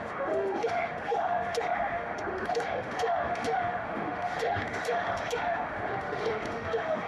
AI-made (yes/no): yes